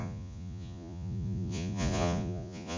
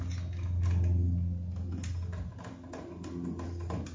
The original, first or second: second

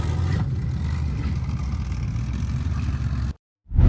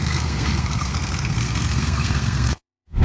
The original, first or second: first